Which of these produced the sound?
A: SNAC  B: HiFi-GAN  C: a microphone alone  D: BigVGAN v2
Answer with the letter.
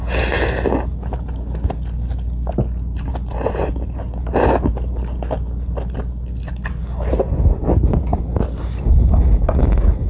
C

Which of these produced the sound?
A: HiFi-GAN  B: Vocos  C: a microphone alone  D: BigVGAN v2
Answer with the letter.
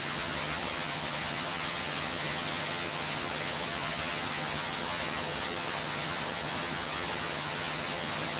A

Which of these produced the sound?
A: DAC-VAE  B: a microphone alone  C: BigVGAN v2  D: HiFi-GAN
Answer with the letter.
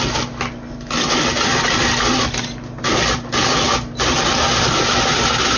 B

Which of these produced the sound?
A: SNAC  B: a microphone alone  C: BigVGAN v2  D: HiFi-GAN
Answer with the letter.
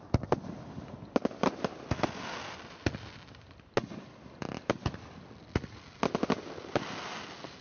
B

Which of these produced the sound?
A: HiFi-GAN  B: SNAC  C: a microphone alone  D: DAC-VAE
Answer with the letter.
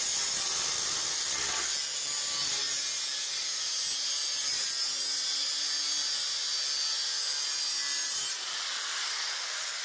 C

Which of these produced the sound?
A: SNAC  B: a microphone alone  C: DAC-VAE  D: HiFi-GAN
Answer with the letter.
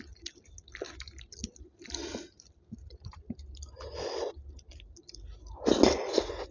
B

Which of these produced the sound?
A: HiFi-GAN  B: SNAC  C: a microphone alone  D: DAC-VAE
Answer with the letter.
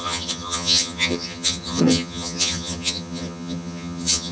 A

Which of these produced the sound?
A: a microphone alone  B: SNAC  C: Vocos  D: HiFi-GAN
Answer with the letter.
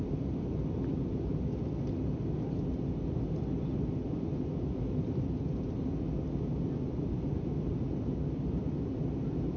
A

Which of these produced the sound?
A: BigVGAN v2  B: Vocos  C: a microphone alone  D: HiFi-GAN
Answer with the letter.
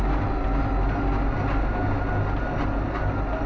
C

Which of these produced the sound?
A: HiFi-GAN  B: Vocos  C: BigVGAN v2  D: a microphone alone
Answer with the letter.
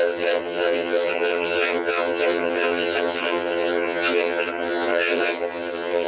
A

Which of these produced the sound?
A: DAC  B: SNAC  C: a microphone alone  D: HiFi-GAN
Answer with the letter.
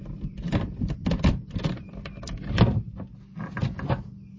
C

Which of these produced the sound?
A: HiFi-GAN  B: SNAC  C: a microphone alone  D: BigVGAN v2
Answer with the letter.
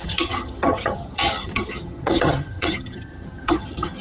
A